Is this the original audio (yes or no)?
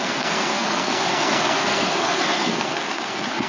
no